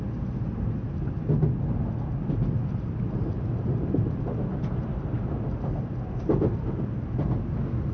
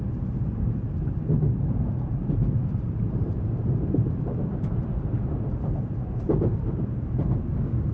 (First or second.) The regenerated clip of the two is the second